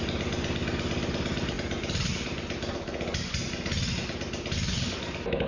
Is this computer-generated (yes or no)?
no